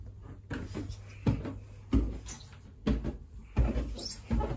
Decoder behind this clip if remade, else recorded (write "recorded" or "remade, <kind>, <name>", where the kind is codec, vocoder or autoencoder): recorded